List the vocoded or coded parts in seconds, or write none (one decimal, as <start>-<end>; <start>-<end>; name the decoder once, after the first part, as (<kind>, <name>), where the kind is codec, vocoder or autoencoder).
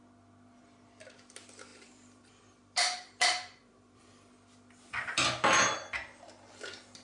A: 1.7-4.0 (vocoder, BigVGAN v2)